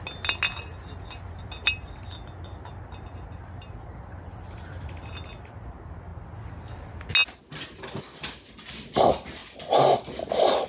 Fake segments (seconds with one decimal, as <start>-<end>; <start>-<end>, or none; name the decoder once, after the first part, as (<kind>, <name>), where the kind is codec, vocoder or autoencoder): none